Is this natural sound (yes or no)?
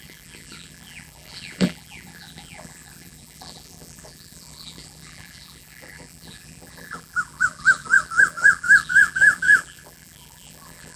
no